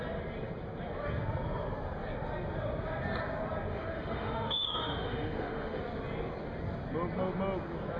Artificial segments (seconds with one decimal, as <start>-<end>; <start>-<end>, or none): 3.7-5.8